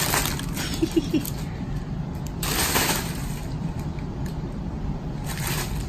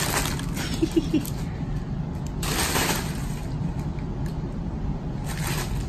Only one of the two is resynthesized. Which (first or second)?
first